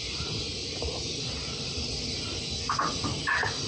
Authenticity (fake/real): real